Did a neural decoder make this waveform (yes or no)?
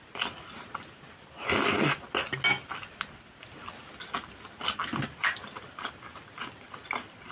no